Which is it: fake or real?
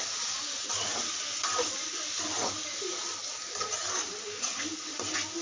real